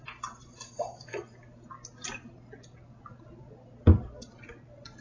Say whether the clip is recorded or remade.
recorded